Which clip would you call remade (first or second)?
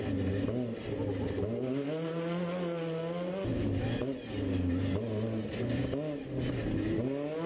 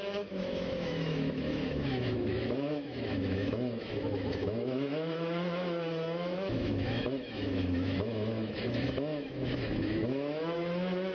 second